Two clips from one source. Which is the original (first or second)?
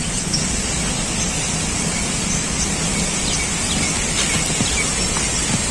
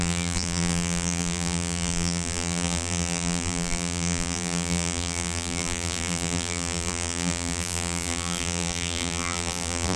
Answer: first